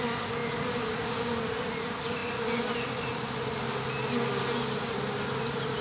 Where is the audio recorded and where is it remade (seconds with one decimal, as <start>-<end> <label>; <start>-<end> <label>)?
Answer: 0.0-5.8 recorded